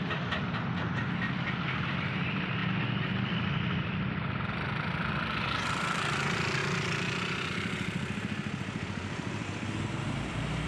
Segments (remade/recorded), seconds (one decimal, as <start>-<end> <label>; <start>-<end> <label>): 0.0-2.6 remade; 2.6-3.1 recorded; 3.1-6.6 remade; 6.6-7.5 recorded; 7.5-10.7 remade